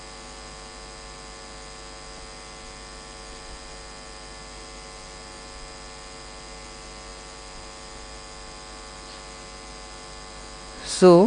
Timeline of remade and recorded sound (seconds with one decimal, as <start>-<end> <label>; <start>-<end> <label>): 0.0-11.3 recorded